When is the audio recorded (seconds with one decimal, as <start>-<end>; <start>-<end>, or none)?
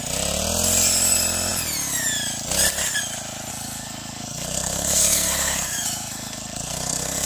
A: 0.0-3.5